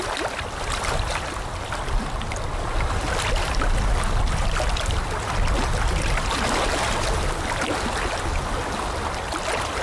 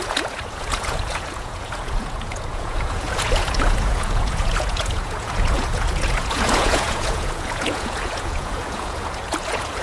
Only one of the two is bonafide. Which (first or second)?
first